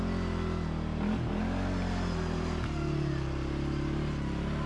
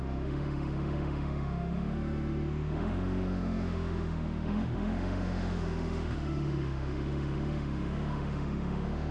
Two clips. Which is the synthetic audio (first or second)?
second